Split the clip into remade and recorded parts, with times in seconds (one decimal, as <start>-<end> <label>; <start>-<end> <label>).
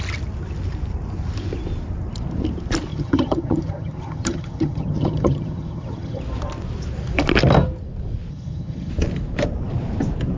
0.0-2.9 recorded; 2.9-6.2 remade; 6.2-8.3 recorded; 8.3-8.9 remade; 8.9-10.4 recorded